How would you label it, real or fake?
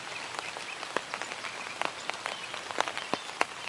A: real